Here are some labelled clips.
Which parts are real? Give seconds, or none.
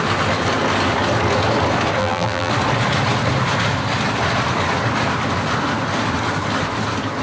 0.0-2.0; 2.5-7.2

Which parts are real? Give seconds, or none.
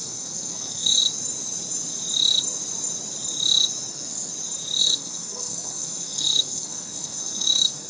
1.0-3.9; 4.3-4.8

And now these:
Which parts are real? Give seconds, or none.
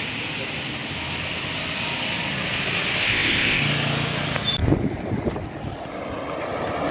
0.0-3.0; 3.6-6.9